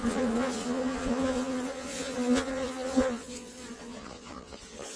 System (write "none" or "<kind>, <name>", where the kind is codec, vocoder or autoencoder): vocoder, Vocos